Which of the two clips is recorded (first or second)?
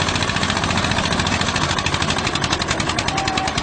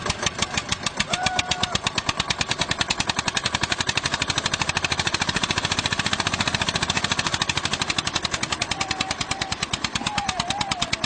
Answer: first